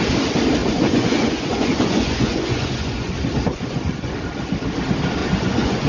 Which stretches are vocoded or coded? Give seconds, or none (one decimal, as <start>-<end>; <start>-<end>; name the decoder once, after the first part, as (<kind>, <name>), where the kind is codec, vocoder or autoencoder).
0.6-3.1 (vocoder, Vocos); 3.5-4.1; 5.2-5.9